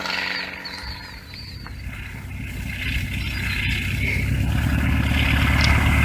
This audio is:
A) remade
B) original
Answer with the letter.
B